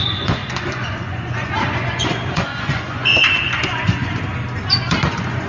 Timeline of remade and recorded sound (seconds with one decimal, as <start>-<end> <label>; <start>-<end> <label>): 0.0-4.0 remade; 4.0-5.1 recorded; 5.1-5.5 remade